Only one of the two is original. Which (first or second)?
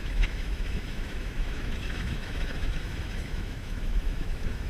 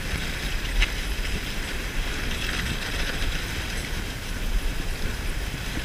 second